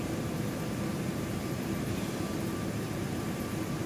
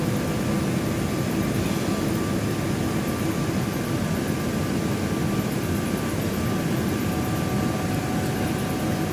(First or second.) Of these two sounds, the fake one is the first